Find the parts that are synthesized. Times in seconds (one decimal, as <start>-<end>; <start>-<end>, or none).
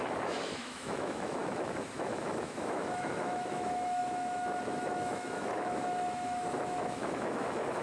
0.0-7.8